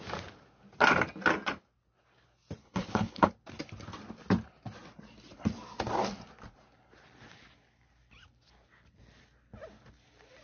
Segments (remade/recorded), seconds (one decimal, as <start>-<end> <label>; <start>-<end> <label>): 0.0-2.6 recorded; 2.6-3.3 remade; 3.3-10.4 recorded